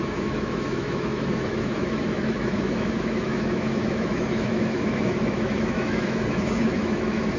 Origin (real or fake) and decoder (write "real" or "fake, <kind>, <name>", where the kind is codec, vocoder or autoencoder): fake, autoencoder, DAC-VAE